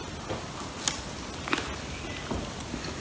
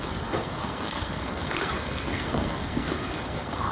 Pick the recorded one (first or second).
first